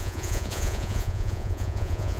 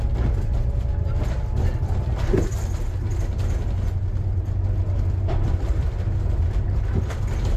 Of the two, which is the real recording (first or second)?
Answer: second